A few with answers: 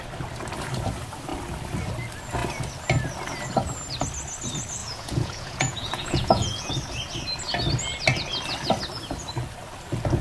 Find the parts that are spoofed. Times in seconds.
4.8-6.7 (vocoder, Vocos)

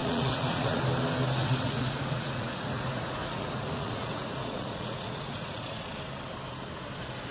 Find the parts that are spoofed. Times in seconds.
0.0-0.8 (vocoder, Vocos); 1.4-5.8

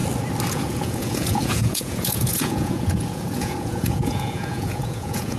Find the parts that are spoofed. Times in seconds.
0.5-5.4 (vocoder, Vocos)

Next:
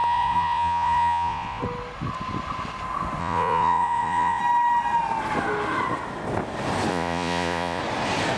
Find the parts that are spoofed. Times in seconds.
0.0-1.6 (vocoder, Vocos); 3.2-4.4; 6.9-7.8

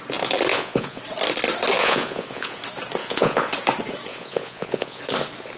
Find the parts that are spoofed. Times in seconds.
0.5-1.0 (vocoder, Vocos); 1.8-2.6; 3.0-3.5; 4.1-5.0